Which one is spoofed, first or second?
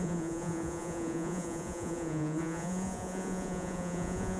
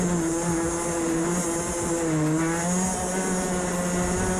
first